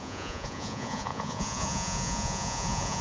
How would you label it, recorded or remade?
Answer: remade